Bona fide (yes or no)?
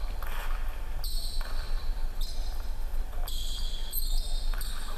yes